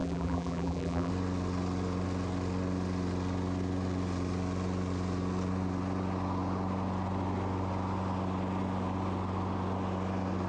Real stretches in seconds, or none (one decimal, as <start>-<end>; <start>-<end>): 1.1-10.5